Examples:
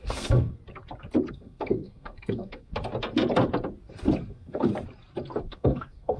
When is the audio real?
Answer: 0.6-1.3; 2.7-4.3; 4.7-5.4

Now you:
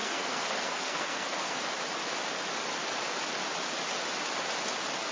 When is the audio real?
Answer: 1.6-5.1

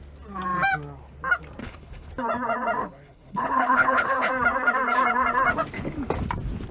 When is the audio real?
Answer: 0.0-1.6; 2.1-2.8; 4.3-6.7

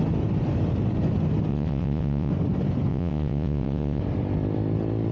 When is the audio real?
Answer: 0.0-1.5; 2.3-2.9; 4.0-5.1

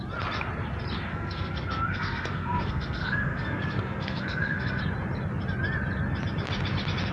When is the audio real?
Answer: 0.0-1.1; 4.8-7.1

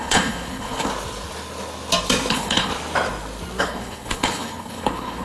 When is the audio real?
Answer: 0.9-2.3; 2.7-3.6

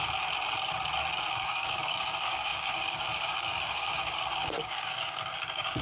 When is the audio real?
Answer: 0.0-1.3

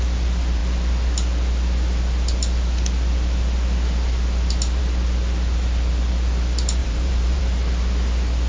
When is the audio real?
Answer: 0.0-6.8; 7.4-8.5